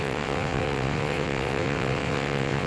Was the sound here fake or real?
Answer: fake